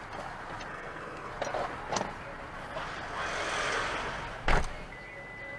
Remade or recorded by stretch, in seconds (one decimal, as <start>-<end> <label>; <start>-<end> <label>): 0.0-0.7 recorded; 0.7-1.3 remade; 1.3-5.6 recorded